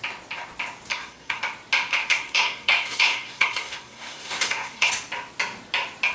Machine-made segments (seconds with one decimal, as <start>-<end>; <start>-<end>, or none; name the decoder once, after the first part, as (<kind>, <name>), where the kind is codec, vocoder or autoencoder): 0.9-1.4 (codec, SNAC); 1.9-4.9